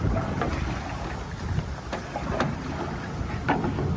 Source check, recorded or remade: recorded